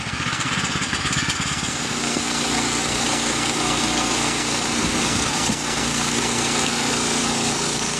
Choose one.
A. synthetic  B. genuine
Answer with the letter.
A